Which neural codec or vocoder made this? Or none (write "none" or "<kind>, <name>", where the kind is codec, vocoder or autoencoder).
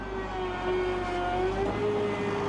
none